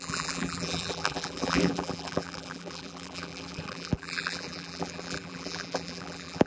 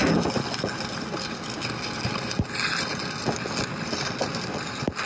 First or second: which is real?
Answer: second